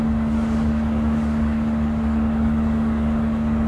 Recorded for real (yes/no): no